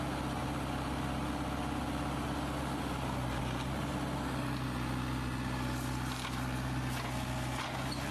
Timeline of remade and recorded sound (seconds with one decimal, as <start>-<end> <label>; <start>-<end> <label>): 0.0-8.1 recorded